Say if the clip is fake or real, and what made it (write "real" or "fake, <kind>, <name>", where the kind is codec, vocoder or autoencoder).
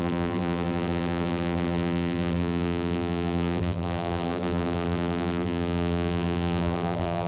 fake, vocoder, BigVGAN v2